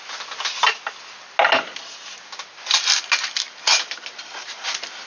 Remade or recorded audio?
recorded